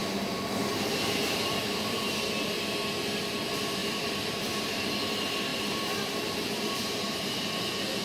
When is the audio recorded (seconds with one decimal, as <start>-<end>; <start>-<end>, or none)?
2.1-3.8; 4.9-5.5; 7.6-8.0